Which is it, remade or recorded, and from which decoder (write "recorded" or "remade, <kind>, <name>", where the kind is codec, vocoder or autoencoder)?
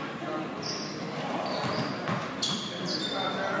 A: recorded